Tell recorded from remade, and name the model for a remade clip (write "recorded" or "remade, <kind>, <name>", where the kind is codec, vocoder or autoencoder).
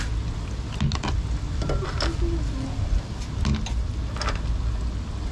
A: recorded